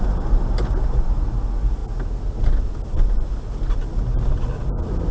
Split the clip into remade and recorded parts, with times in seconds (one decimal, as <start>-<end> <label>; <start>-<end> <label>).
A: 0.0-5.1 recorded